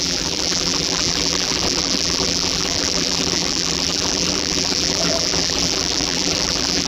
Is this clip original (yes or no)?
no